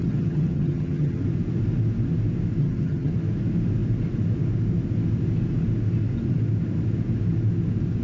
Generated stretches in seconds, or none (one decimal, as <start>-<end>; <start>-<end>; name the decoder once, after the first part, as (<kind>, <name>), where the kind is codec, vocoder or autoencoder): 0.0-1.2 (vocoder, HiFi-GAN); 2.6-3.1